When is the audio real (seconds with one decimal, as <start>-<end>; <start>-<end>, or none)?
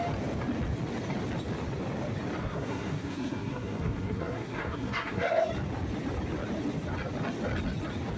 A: 0.0-2.4; 5.5-8.2